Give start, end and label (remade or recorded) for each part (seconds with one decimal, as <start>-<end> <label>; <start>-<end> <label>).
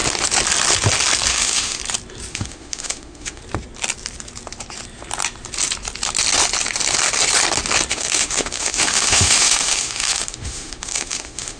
0.0-1.3 recorded; 1.3-1.8 remade; 1.8-2.3 recorded; 2.3-3.4 remade; 3.4-7.9 recorded; 7.9-11.6 remade